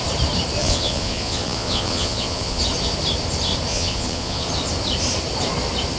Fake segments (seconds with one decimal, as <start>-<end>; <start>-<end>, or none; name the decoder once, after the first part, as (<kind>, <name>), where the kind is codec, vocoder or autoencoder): 0.6-2.6 (vocoder, Vocos); 3.7-4.5